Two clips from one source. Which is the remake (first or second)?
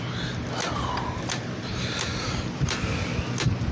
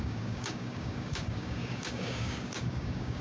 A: second